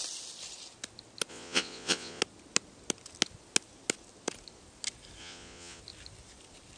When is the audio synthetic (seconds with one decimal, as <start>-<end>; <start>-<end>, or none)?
1.3-2.2; 5.2-5.8